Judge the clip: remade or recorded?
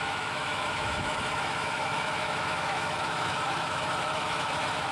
remade